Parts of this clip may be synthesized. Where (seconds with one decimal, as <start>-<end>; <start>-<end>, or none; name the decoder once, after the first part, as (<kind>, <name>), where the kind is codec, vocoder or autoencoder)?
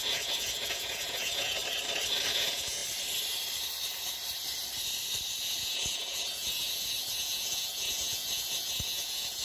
0.0-1.6 (vocoder, Vocos); 2.3-2.8; 5.4-9.4